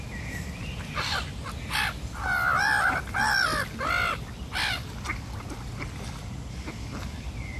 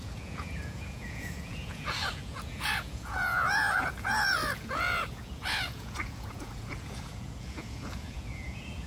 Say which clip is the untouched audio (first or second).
first